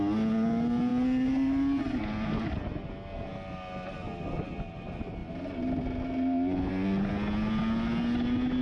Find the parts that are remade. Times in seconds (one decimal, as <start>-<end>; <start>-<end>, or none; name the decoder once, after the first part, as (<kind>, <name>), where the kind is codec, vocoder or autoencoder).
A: none